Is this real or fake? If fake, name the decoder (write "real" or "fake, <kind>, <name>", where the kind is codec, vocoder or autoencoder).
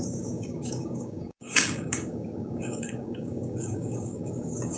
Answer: fake, codec, DAC